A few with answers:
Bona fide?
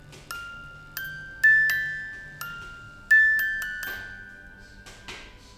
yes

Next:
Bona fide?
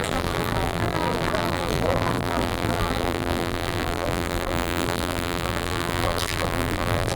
no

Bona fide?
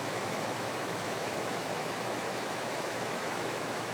no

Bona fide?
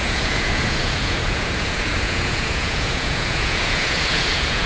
no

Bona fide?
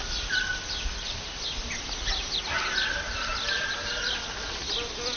yes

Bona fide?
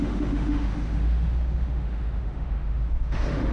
no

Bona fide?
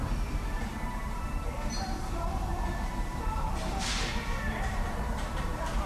no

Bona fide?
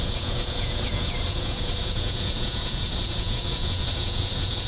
no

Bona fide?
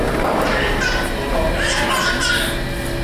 yes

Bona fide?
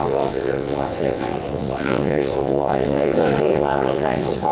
no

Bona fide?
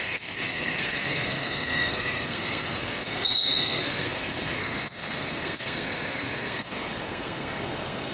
no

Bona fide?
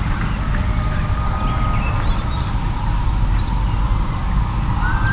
yes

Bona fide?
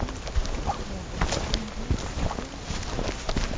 yes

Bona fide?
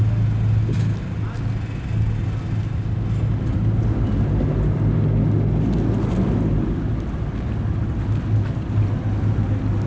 yes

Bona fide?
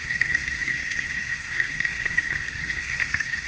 no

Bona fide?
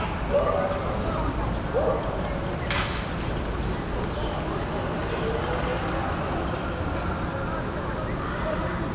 yes